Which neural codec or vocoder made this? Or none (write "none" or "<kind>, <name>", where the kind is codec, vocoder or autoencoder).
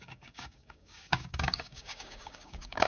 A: codec, DAC